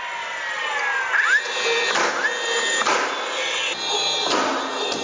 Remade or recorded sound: recorded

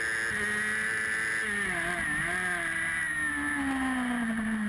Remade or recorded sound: recorded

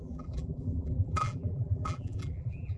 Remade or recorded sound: remade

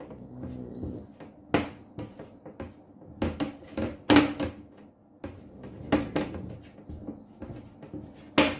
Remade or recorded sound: recorded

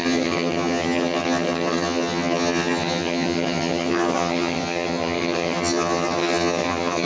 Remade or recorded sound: remade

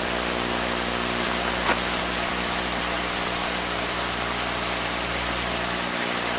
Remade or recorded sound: remade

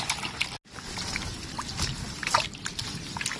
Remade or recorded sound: recorded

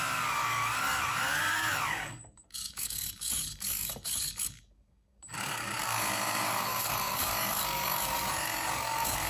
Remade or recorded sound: remade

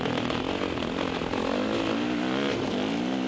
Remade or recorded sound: recorded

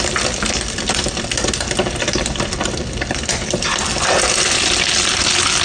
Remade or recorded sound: recorded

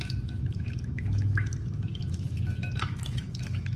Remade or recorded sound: remade